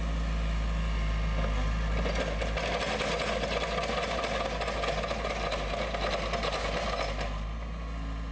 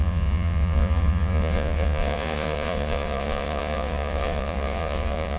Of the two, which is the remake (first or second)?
second